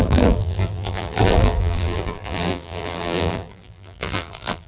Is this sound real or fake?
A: fake